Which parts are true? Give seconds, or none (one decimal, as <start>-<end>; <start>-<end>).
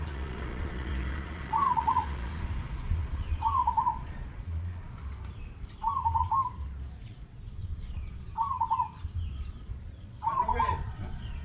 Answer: 5.0-7.0; 8.3-9.5